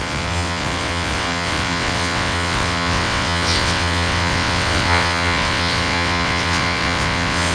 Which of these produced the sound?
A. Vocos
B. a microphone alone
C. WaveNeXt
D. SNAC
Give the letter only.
C